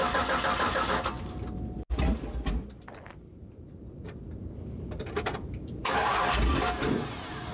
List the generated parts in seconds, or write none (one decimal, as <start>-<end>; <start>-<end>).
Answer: 3.3-6.1